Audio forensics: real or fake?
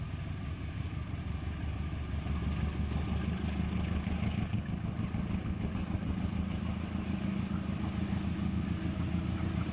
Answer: real